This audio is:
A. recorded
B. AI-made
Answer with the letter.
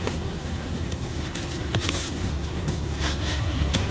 B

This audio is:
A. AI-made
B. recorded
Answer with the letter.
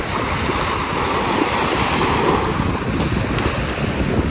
B